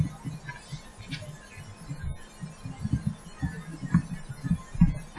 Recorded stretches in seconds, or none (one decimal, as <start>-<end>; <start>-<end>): 0.0-0.9; 1.6-3.7; 4.3-5.2